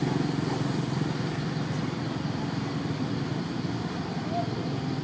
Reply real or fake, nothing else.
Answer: real